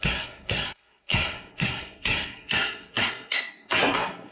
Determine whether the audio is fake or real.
fake